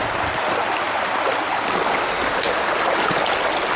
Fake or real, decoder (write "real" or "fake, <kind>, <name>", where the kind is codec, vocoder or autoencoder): real